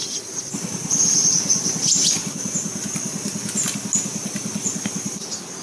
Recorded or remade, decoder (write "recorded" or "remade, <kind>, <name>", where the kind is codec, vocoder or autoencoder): recorded